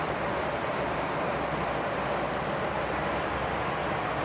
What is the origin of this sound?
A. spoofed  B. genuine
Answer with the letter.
B